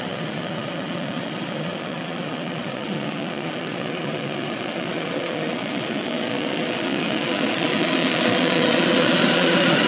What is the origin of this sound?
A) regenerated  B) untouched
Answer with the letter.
A